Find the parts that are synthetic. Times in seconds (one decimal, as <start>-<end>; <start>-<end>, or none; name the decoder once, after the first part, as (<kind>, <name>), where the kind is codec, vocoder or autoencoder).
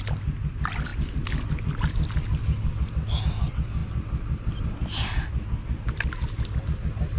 none